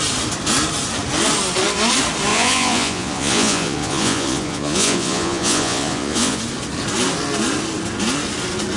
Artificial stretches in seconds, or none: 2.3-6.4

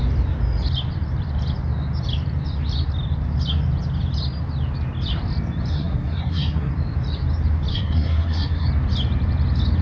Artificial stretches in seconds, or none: 5.7-6.7; 7.7-8.7

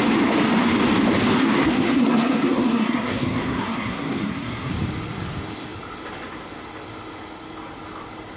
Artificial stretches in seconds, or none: 1.4-4.7

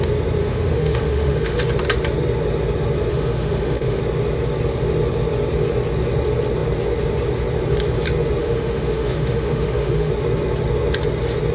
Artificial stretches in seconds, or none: 0.4-1.6; 3.1-4.0; 8.4-10.1